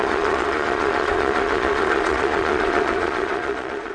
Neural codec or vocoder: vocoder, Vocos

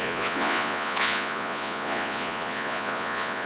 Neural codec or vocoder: vocoder, Vocos